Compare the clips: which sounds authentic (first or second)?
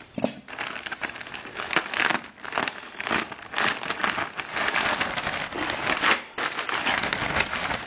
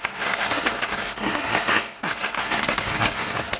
first